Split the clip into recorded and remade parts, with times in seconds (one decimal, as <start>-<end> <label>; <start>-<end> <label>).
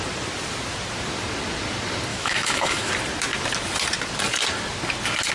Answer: 0.0-2.1 recorded; 2.1-2.9 remade; 2.9-5.3 recorded